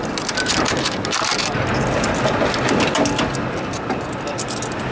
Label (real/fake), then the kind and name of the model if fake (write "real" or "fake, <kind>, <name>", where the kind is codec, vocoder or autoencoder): real